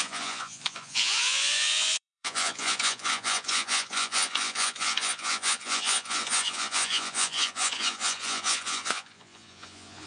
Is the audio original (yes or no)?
no